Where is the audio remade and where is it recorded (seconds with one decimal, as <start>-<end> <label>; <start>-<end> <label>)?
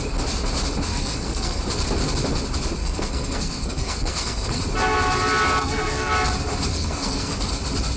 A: 0.0-0.9 recorded; 0.9-1.6 remade; 1.6-2.8 recorded; 2.8-4.6 remade; 4.6-5.6 recorded; 5.6-6.1 remade; 6.1-6.7 recorded; 6.7-7.5 remade; 7.5-8.0 recorded